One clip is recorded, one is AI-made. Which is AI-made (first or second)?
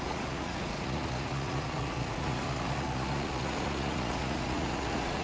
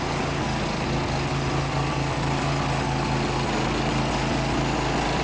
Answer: first